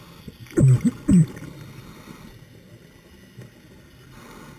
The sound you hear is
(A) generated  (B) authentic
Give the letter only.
B